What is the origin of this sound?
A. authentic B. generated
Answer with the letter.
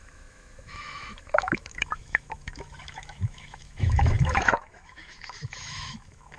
B